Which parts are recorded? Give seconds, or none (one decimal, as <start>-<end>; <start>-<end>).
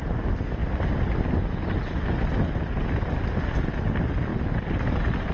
0.0-5.3